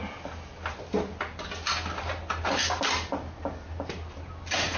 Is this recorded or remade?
recorded